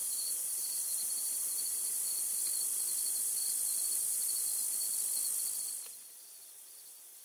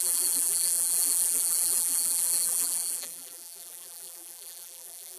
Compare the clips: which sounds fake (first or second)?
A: second